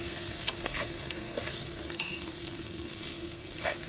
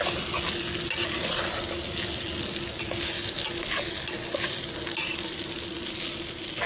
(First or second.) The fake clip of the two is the first